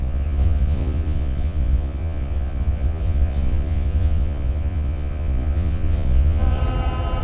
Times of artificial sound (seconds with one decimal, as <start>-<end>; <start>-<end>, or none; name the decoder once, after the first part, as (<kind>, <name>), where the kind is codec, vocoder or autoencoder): 0.0-6.6 (vocoder, Vocos)